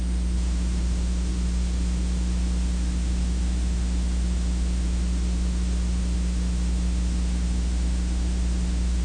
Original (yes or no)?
no